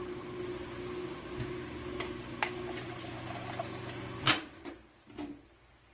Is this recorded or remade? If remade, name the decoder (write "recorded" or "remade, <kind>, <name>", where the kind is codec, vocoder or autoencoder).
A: recorded